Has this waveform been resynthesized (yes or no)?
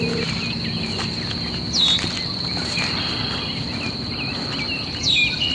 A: no